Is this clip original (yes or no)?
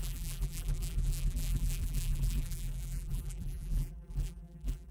no